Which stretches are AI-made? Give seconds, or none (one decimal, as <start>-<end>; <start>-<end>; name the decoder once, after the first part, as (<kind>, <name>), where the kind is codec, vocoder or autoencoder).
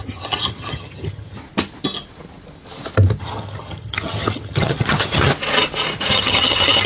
0.0-1.4 (vocoder, HiFi-GAN); 3.2-5.3; 6.1-6.9